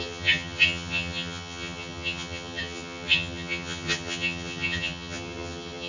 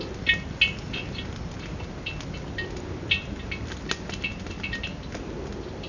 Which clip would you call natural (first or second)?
second